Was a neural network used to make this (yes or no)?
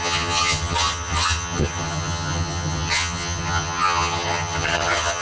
yes